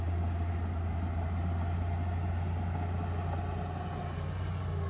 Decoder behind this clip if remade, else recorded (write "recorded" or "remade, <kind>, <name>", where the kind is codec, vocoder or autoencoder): recorded